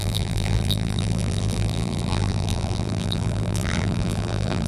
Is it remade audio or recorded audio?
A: remade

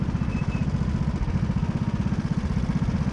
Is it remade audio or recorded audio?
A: remade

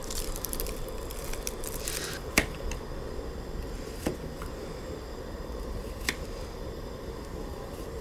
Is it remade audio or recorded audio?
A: recorded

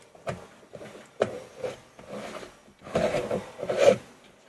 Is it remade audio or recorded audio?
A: recorded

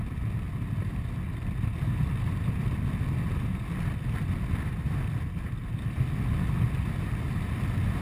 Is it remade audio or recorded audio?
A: recorded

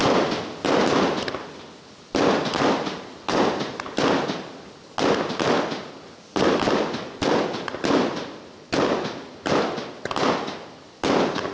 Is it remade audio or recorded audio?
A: recorded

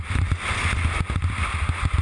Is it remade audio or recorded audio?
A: recorded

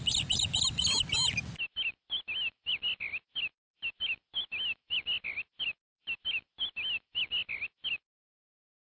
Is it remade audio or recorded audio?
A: recorded